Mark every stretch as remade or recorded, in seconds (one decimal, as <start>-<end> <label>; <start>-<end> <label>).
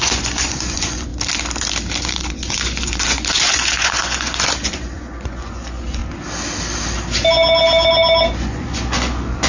0.0-1.1 remade; 1.1-2.0 recorded; 2.0-6.0 remade; 6.0-8.3 recorded; 8.3-9.5 remade